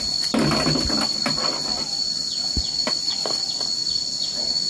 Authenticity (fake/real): real